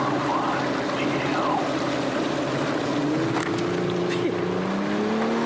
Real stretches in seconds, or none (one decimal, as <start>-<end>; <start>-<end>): 0.0-5.5